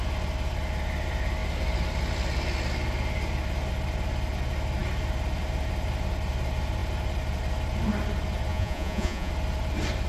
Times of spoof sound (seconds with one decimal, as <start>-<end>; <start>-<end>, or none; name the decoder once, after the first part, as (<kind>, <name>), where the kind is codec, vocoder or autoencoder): 8.5-9.3 (vocoder, Vocos)